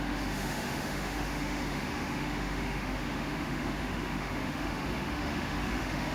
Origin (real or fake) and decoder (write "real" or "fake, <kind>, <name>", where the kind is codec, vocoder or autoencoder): fake, autoencoder, DAC-VAE